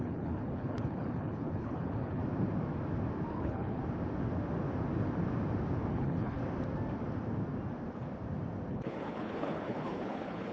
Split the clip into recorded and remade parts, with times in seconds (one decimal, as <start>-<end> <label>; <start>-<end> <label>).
0.0-2.2 remade; 2.2-3.3 recorded; 3.3-3.8 remade; 3.8-5.9 recorded; 5.9-6.4 remade; 6.4-8.7 recorded; 8.7-10.5 remade